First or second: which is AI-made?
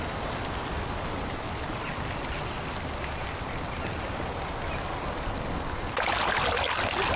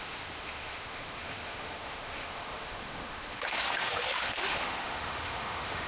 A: second